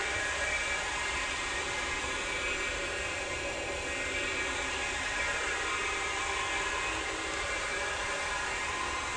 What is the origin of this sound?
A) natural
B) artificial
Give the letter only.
A